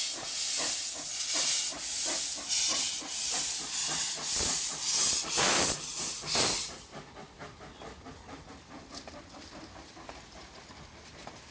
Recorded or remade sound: recorded